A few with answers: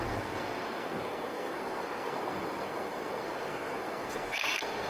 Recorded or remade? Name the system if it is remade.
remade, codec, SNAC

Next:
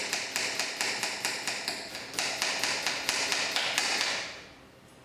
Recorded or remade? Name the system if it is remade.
recorded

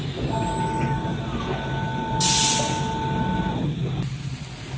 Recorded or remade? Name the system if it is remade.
recorded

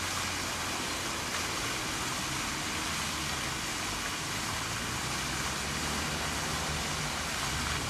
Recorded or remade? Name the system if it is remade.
recorded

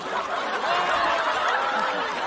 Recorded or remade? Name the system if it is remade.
recorded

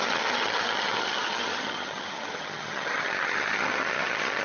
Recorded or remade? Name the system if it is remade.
remade, vocoder, HiFi-GAN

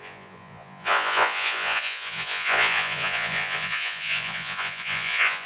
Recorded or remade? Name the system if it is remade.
remade, vocoder, Vocos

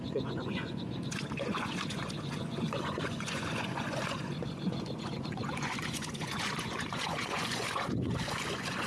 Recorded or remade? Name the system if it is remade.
remade, vocoder, Vocos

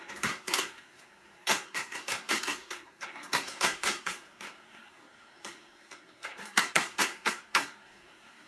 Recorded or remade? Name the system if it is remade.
remade, codec, SNAC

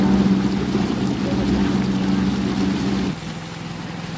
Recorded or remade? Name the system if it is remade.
recorded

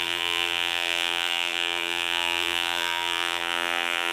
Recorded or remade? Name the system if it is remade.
remade, vocoder, BigVGAN v2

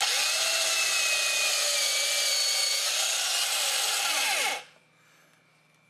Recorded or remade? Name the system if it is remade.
recorded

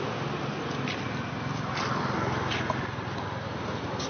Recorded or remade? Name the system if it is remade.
recorded